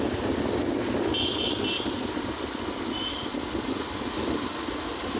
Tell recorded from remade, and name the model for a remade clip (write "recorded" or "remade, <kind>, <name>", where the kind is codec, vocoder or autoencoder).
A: recorded